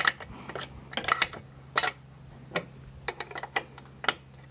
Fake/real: real